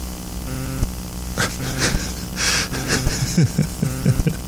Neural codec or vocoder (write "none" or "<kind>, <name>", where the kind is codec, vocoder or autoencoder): none